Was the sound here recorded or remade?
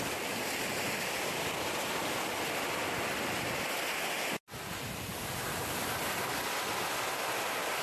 recorded